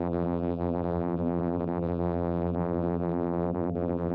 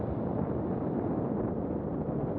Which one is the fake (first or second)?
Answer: first